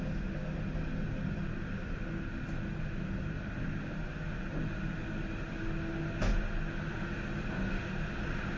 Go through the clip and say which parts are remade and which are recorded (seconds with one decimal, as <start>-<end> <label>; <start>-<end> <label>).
0.0-8.6 recorded